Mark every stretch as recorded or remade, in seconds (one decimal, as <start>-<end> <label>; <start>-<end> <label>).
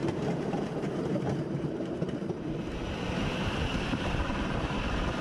0.0-3.1 remade; 3.1-3.7 recorded; 3.7-4.8 remade; 4.8-5.2 recorded